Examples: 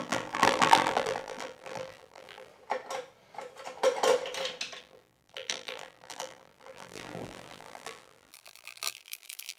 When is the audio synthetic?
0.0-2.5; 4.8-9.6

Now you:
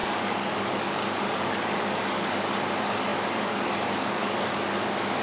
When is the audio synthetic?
0.0-5.2

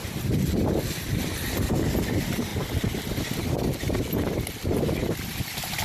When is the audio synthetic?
5.0-5.8